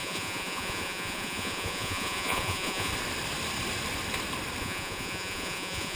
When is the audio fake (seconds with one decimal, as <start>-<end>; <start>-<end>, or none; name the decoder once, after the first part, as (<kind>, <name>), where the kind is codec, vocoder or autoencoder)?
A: 0.0-2.9 (vocoder, Vocos); 4.6-6.0